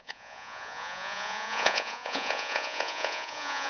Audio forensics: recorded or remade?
remade